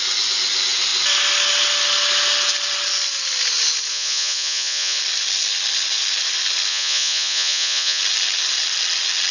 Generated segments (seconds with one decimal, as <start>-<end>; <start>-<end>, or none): 3.9-5.0; 6.7-8.0